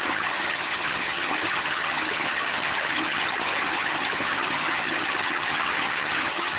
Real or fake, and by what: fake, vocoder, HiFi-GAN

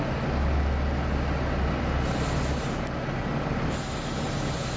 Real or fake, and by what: real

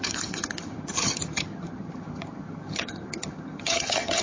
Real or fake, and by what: fake, vocoder, HiFi-GAN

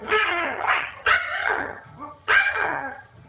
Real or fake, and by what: fake, vocoder, HiFi-GAN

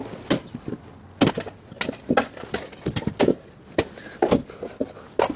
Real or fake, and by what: real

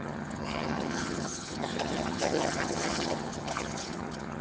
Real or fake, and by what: fake, vocoder, HiFi-GAN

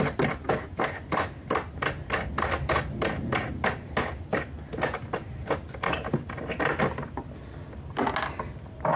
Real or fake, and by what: real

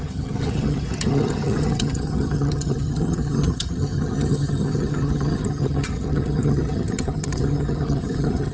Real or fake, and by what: fake, vocoder, HiFi-GAN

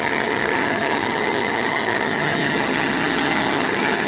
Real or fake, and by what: fake, vocoder, HiFi-GAN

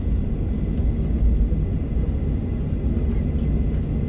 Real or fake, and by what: real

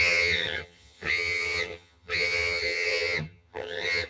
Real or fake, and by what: fake, vocoder, HiFi-GAN